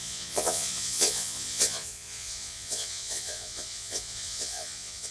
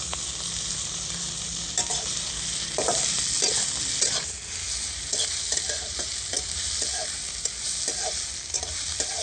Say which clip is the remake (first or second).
first